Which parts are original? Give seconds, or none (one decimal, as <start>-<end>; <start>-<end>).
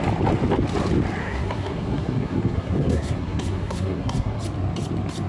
0.0-1.2; 4.4-5.3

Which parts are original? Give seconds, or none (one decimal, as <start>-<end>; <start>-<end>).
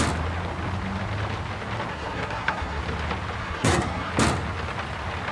0.0-1.9; 2.8-3.4; 4.1-5.3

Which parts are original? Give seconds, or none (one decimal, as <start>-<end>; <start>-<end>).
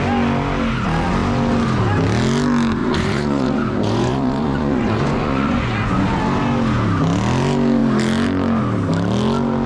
0.0-2.8; 6.2-9.7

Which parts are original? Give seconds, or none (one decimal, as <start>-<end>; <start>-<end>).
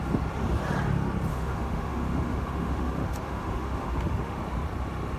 0.0-1.3; 4.4-5.2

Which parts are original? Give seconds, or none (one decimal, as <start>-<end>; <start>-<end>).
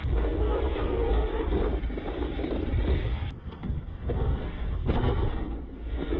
1.3-2.9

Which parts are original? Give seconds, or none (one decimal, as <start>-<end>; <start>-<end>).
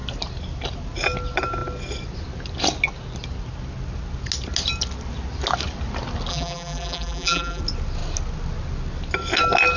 0.0-6.3; 7.6-9.8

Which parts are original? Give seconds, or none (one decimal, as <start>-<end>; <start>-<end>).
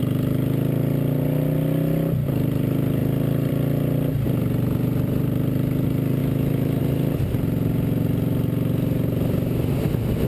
0.0-6.2; 6.8-10.3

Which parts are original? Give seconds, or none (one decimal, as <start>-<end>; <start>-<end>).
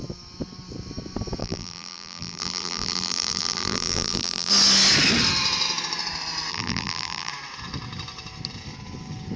0.0-1.4; 4.5-6.5; 7.3-9.4